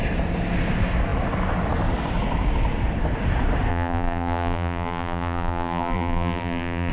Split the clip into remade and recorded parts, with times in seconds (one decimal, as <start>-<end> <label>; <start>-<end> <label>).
0.0-3.7 recorded; 3.7-6.9 remade